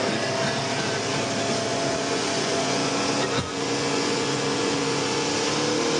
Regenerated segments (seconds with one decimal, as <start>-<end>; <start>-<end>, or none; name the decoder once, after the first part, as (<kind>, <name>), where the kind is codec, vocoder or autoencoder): 1.7-5.3 (vocoder, Vocos)